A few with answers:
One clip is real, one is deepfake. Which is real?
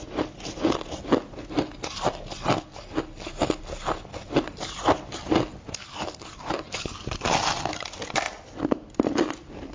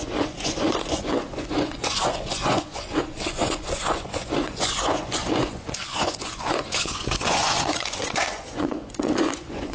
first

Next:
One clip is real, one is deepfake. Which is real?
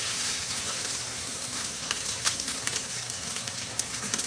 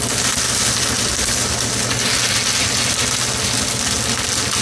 second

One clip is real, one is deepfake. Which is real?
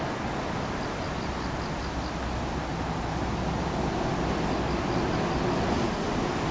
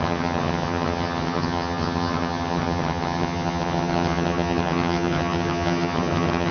first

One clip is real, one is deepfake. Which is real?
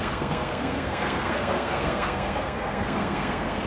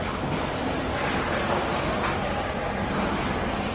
second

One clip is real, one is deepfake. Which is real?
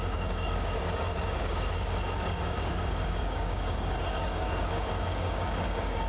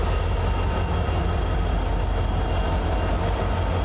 second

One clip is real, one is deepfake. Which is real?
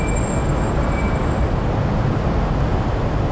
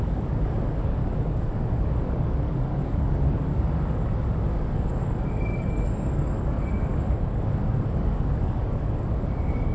first